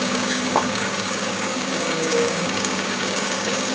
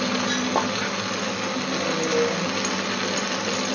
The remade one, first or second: first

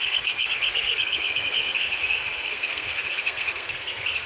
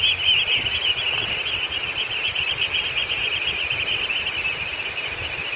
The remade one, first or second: first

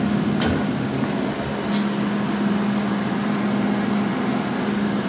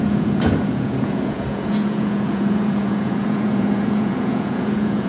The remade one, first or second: second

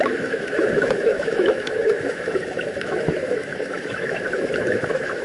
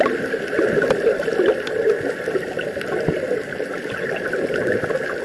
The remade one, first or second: first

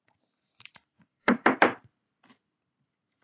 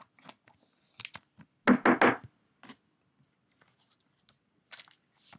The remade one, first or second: first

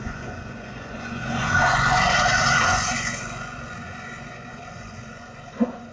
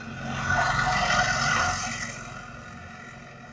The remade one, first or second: first